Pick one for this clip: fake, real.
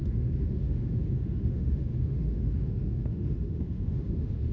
fake